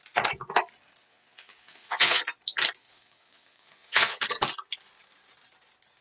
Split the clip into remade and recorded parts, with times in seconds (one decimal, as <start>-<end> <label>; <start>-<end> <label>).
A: 0.0-1.0 recorded; 1.0-2.2 remade; 2.2-2.8 recorded; 2.8-4.2 remade; 4.2-6.0 recorded